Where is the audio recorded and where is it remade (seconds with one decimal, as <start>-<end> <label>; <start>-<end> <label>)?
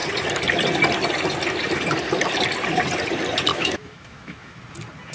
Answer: 0.0-3.5 recorded; 3.5-4.6 remade; 4.6-5.1 recorded